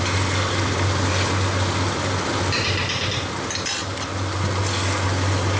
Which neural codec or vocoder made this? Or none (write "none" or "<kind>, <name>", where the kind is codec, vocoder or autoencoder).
none